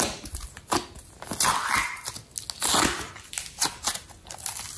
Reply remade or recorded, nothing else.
recorded